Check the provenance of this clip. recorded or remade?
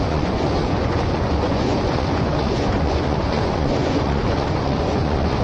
remade